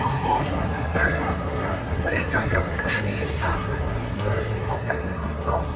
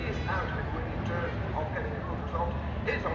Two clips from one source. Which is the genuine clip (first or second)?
second